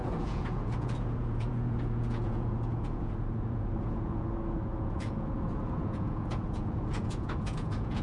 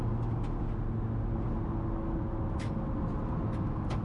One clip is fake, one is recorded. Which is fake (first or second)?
first